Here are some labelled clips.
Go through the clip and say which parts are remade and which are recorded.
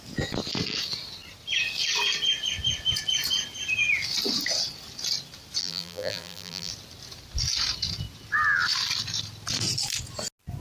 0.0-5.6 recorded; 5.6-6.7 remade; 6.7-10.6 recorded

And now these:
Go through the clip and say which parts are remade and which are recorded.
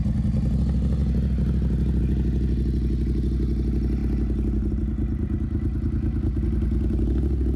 0.0-7.6 recorded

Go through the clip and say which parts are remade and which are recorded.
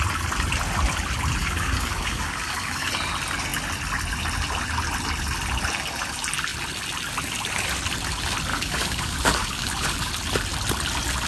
0.0-1.4 recorded; 1.4-2.9 remade; 2.9-8.5 recorded; 8.5-10.1 remade; 10.1-11.3 recorded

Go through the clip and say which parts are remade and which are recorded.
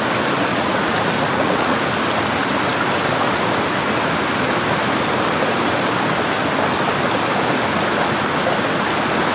0.0-0.5 recorded; 0.5-1.8 remade; 1.8-9.3 recorded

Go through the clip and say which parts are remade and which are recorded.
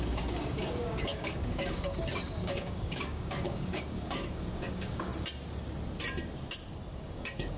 0.0-5.1 remade; 5.1-6.9 recorded; 6.9-7.6 remade